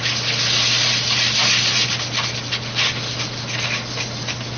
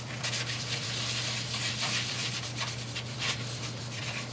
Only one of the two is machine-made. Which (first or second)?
second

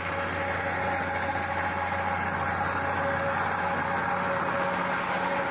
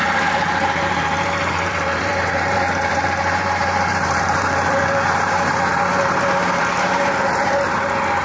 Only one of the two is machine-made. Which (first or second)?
second